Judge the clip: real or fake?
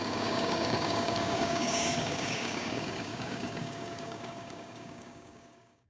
fake